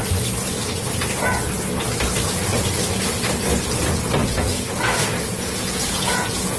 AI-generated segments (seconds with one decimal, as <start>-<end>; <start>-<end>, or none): 4.2-4.7; 5.3-6.6